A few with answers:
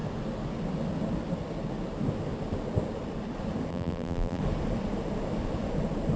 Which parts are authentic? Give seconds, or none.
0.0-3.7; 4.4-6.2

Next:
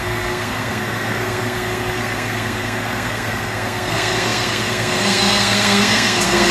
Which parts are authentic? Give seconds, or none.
none

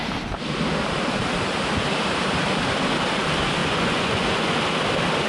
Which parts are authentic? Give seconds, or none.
0.0-3.6; 4.5-5.3

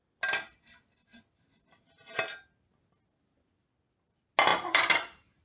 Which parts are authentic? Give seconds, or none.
0.0-4.5